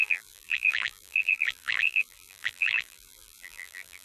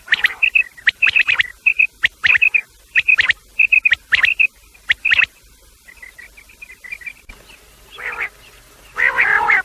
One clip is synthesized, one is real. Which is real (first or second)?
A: second